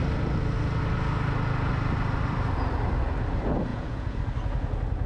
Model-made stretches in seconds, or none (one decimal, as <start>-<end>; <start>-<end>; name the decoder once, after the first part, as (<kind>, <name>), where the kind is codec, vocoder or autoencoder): 3.7-4.2 (vocoder, Vocos)